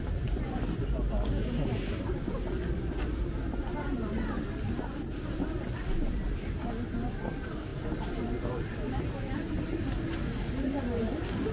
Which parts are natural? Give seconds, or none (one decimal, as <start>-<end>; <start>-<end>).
0.0-11.5